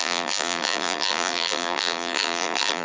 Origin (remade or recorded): remade